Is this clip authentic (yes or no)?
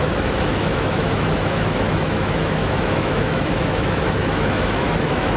no